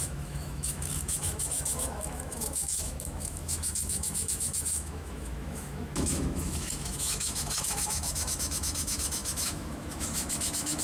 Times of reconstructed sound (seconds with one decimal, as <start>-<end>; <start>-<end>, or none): 0.0-10.8